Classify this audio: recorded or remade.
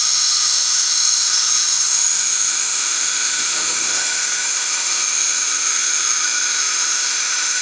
remade